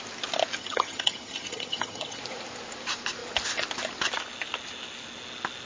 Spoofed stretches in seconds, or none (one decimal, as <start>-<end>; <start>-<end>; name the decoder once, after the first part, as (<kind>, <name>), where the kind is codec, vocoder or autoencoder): 0.6-2.2 (vocoder, HiFi-GAN)